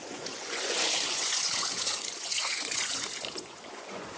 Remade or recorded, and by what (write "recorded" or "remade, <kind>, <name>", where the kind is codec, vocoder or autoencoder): remade, vocoder, Vocos